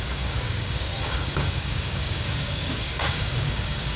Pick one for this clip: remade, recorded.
remade